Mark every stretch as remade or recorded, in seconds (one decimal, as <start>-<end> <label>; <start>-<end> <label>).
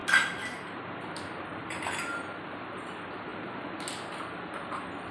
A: 0.0-5.1 recorded